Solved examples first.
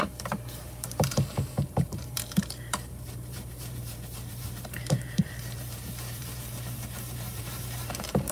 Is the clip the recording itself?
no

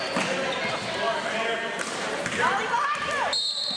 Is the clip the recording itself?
yes